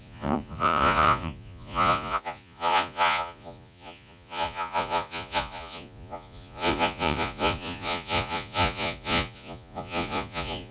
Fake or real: fake